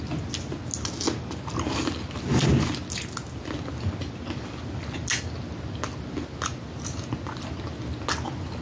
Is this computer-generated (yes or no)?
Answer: no